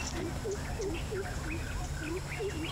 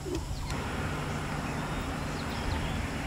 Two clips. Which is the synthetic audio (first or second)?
second